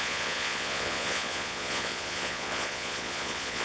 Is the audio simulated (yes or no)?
yes